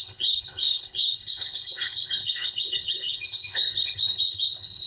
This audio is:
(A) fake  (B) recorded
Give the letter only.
A